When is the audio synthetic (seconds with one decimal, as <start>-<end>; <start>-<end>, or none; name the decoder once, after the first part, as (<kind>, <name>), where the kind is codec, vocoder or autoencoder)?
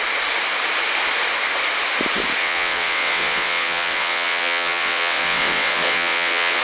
2.4-6.6 (vocoder, WaveNeXt)